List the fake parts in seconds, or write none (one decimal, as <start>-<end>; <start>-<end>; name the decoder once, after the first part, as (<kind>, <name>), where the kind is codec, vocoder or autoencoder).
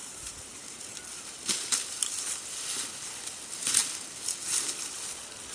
0.0-0.9 (vocoder, BigVGAN v2)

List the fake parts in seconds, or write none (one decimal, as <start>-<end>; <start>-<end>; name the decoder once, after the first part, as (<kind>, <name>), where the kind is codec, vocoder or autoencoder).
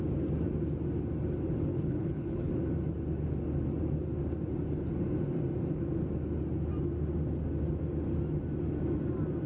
1.7-2.5 (codec, HILCodec)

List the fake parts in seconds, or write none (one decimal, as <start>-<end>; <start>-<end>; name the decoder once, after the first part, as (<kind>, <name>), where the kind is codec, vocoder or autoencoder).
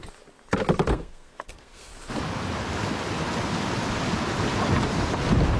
0.9-1.9 (codec, SNAC)